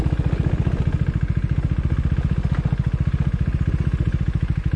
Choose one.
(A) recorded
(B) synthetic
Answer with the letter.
A